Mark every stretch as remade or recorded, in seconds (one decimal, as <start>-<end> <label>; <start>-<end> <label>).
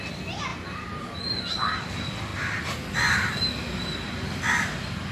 0.0-5.1 recorded